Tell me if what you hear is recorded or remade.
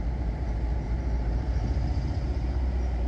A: remade